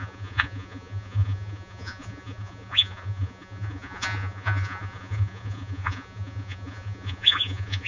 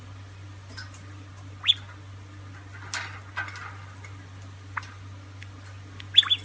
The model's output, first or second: first